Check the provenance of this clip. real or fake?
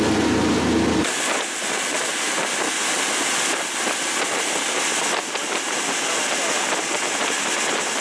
real